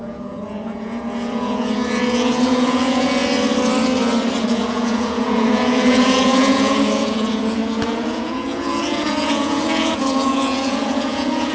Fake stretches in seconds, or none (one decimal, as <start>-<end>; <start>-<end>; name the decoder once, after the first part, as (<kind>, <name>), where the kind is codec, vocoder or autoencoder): 0.0-3.2 (vocoder, Vocos); 4.4-11.5